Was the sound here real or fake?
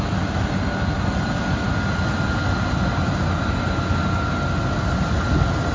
real